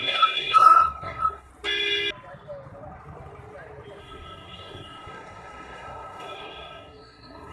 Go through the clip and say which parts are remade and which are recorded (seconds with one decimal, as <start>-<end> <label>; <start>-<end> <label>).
0.0-1.5 remade; 1.5-4.0 recorded; 4.0-7.5 remade